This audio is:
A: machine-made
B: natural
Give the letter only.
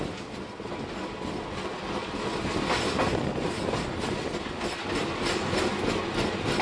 B